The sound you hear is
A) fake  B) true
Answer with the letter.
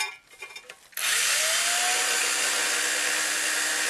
B